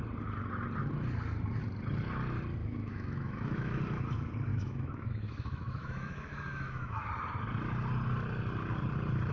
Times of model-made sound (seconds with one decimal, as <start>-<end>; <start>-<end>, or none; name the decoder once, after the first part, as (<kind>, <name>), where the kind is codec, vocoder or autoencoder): 2.6-3.8 (autoencoder, DAC-VAE); 4.5-7.1